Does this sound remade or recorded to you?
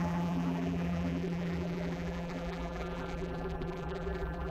remade